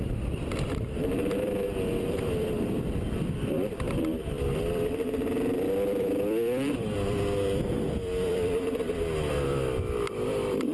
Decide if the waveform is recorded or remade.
remade